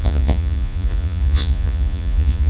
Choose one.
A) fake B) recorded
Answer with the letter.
A